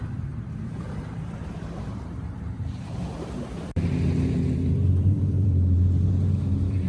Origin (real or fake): fake